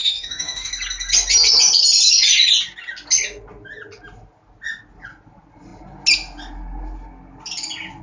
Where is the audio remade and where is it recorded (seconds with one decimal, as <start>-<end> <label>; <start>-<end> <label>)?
0.0-0.7 remade; 0.7-8.0 recorded